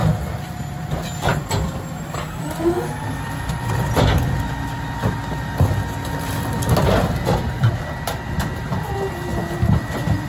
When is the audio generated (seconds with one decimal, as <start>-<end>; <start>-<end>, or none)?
none

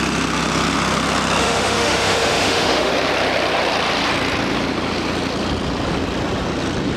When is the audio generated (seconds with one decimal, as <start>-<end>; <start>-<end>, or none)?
1.4-2.9

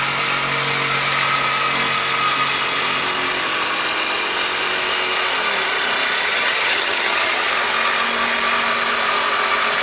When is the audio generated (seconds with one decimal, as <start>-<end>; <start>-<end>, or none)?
6.3-7.5

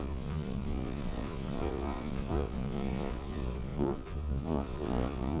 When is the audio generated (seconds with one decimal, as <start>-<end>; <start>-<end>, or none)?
0.0-5.4

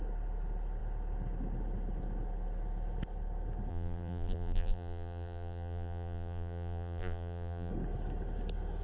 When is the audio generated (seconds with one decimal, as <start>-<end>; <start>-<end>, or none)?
3.7-7.7